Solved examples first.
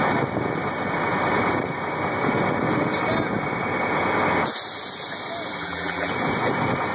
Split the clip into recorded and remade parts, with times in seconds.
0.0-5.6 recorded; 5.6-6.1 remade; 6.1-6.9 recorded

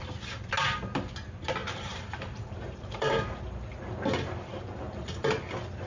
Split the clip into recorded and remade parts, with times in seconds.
0.0-1.6 recorded; 1.6-3.4 remade; 3.4-4.5 recorded; 4.5-5.3 remade; 5.3-5.9 recorded

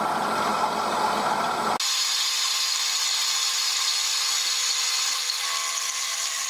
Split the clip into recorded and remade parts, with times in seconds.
0.0-6.5 recorded

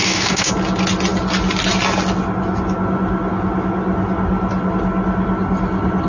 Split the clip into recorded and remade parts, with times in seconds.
0.0-0.5 remade; 0.5-6.1 recorded